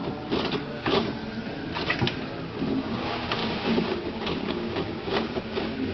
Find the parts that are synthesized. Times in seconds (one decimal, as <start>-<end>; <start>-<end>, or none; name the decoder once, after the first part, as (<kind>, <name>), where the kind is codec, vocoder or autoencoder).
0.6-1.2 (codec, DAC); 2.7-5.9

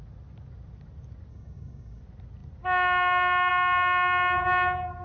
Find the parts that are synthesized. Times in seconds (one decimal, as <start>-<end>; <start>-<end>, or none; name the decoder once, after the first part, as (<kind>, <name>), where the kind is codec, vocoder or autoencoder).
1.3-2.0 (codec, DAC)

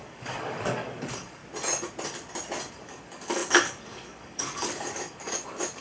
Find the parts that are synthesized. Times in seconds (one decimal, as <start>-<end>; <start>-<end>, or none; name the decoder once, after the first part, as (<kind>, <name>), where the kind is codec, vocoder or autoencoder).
0.0-1.4 (codec, DAC); 2.7-5.8

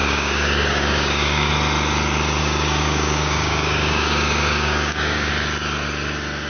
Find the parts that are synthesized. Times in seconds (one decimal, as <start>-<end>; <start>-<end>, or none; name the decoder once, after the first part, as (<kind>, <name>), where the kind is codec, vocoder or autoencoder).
0.0-1.5 (codec, DAC); 2.4-5.3

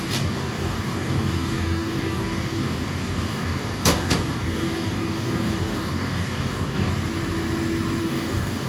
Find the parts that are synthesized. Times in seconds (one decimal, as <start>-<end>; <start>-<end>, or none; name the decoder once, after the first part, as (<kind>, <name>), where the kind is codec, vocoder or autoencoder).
0.0-6.9 (codec, DAC); 8.0-8.7

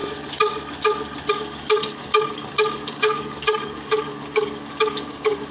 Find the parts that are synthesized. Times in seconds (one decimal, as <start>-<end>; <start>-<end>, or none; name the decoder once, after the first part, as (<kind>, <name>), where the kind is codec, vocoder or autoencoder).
1.3-5.5 (codec, DAC)